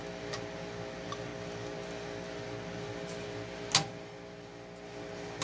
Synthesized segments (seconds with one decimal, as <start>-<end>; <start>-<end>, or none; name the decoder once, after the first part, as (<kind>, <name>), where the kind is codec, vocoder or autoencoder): none